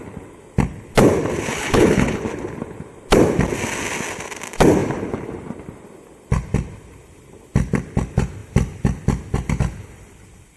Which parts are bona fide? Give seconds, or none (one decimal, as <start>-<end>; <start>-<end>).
0.0-1.5; 2.2-10.6